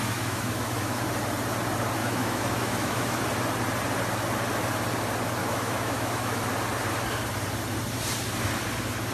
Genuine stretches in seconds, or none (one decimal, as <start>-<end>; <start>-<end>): 1.1-2.0; 3.2-5.4; 6.4-9.1